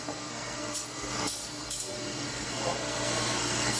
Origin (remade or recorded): remade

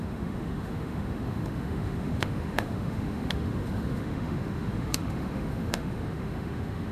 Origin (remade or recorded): remade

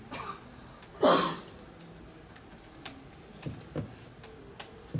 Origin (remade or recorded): recorded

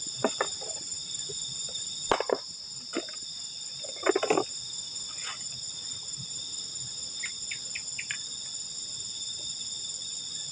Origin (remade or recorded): recorded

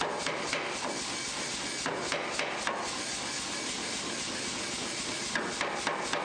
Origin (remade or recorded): recorded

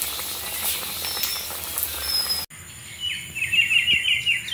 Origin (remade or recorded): recorded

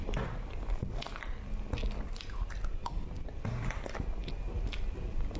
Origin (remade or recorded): recorded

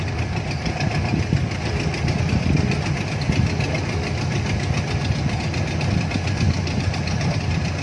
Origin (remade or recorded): recorded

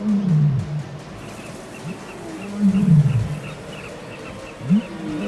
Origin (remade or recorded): recorded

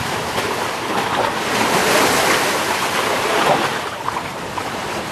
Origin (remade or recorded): recorded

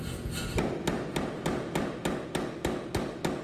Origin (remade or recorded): recorded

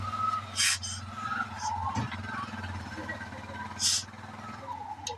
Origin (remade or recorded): recorded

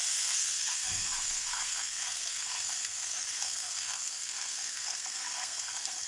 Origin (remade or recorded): remade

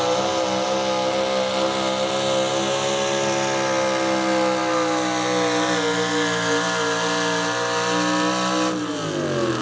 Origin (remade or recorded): recorded